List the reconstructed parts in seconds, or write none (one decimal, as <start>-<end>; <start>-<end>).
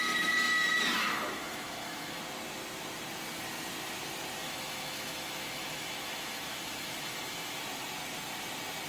1.0-2.2; 4.4-7.6